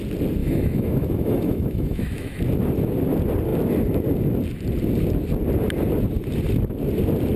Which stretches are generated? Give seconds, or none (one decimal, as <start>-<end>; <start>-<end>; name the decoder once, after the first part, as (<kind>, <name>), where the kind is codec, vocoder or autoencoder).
0.4-2.4 (autoencoder, DAC-VAE)